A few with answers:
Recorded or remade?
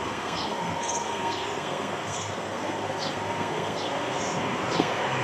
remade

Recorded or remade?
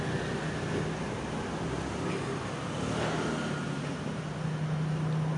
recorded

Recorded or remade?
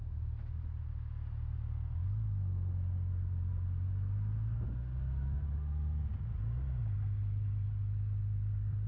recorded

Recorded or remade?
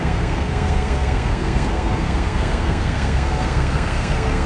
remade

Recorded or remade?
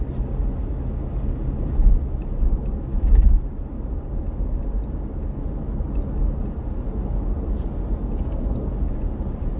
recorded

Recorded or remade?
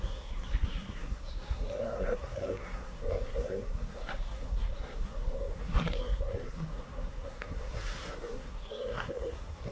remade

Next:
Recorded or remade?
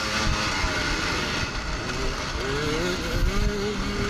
recorded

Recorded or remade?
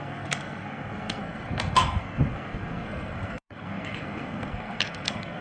remade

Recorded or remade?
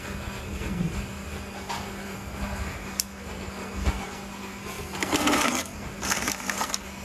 remade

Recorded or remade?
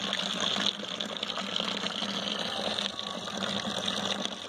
recorded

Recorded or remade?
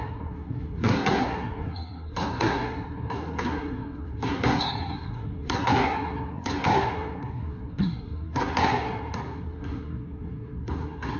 remade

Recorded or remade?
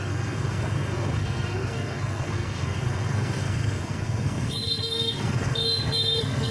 remade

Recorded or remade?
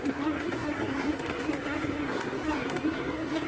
remade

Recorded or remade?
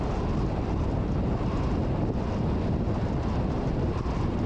recorded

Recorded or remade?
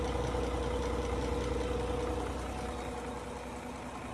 recorded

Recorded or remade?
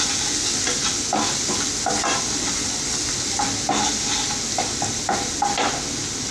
recorded